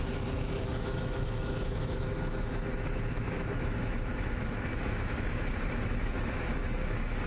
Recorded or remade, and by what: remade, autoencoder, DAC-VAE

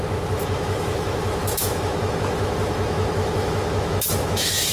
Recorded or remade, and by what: remade, autoencoder, DAC-VAE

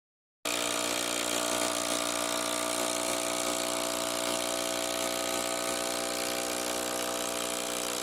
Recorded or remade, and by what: recorded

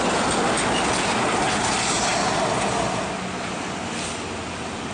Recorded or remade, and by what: recorded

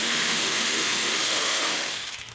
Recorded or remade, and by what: remade, autoencoder, DAC-VAE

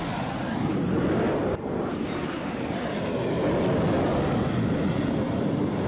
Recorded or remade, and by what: recorded